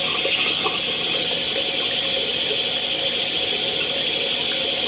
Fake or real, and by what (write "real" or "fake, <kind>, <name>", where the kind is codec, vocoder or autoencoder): real